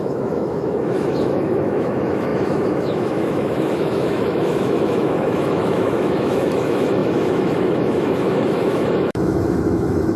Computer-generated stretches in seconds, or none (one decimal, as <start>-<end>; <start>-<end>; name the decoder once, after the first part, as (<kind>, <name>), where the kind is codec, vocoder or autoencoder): 0.0-10.2 (autoencoder, DAC-VAE)

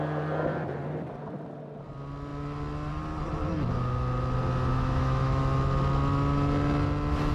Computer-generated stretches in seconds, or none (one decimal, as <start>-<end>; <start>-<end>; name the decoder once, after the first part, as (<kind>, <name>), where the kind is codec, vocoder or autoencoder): 4.7-5.4 (autoencoder, DAC-VAE)

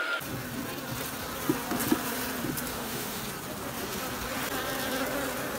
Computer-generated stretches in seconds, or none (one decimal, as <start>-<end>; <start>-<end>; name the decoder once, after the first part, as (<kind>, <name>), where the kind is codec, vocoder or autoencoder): 2.7-3.2 (autoencoder, DAC-VAE)

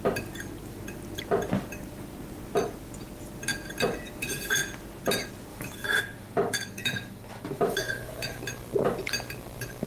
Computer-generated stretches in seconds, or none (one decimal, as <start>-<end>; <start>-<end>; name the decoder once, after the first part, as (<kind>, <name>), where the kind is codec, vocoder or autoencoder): 5.5-8.4 (autoencoder, DAC-VAE)

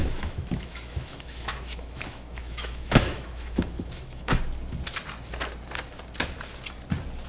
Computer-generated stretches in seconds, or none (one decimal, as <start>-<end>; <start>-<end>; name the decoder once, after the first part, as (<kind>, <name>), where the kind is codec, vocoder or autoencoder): 0.0-4.4 (autoencoder, DAC-VAE)